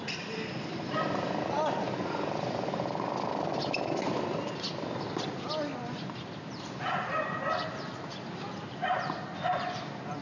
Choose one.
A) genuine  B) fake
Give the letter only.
A